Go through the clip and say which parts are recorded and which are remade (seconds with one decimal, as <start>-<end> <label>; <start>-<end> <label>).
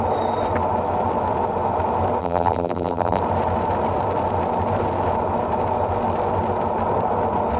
0.0-2.2 recorded; 2.2-3.2 remade; 3.2-7.6 recorded